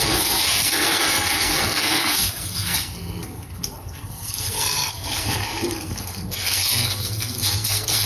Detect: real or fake fake